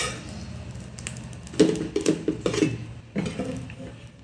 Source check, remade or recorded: recorded